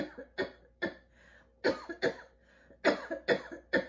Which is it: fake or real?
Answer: real